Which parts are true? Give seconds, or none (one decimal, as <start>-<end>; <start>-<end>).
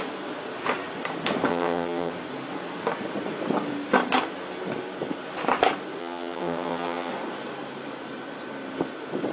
0.0-1.5; 2.1-6.0; 7.1-9.3